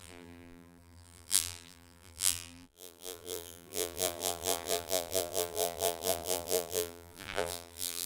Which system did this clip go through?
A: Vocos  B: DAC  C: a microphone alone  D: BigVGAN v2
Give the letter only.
D